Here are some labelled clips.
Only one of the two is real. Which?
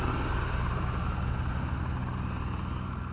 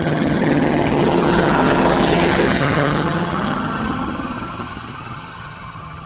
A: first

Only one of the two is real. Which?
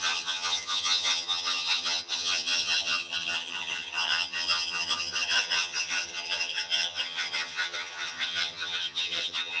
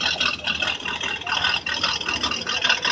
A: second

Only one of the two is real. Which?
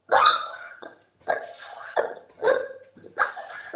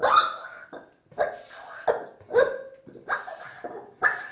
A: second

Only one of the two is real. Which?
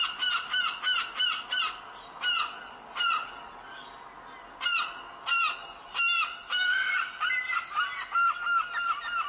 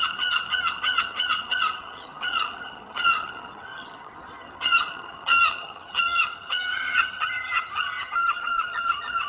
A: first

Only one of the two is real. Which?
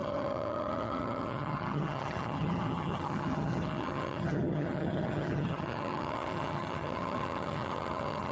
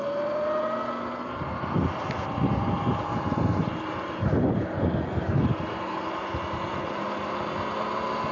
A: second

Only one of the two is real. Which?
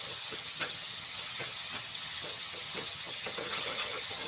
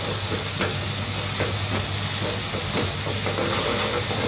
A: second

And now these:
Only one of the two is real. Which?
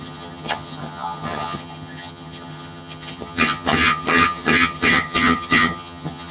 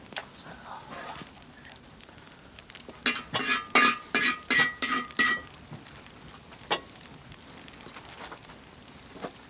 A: second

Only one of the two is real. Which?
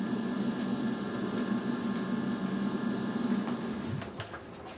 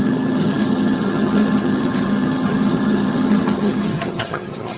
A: first